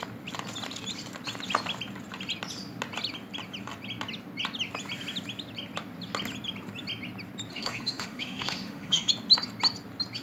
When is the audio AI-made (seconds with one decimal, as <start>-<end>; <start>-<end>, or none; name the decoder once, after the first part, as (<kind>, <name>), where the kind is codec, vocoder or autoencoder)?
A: 7.5-9.1 (autoencoder, DAC-VAE)